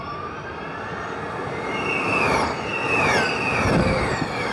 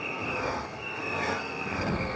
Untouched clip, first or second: first